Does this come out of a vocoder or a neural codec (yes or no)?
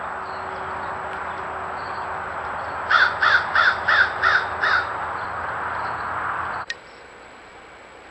no